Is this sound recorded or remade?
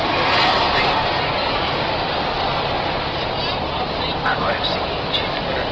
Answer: recorded